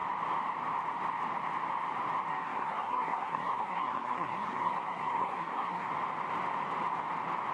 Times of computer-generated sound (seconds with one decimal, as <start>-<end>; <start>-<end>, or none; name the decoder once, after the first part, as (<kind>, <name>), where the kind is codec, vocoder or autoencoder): 2.3-5.9 (codec, SNAC)